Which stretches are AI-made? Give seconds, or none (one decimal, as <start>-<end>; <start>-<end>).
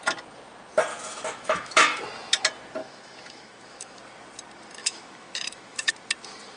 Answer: 0.9-2.0; 2.8-4.0; 4.8-5.9